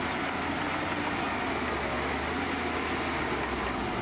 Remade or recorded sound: recorded